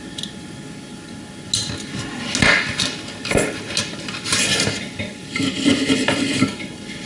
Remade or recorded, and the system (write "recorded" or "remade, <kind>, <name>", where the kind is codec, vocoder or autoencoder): recorded